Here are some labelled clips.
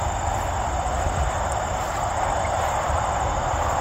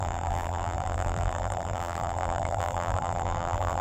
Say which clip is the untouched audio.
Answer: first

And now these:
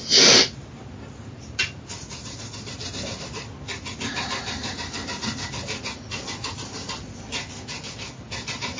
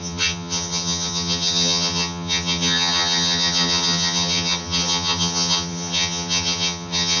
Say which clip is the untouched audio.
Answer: first